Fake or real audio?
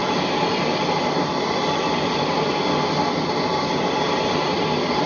real